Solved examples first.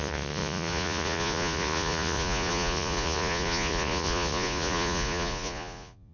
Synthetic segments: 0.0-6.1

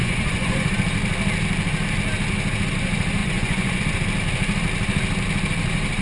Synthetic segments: 0.0-0.7; 3.2-3.8

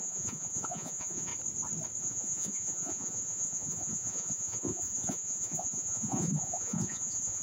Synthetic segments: 0.0-1.3; 2.0-7.4

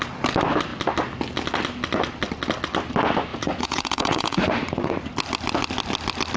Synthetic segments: 3.3-5.1

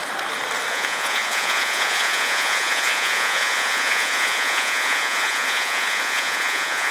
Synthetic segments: 0.7-6.9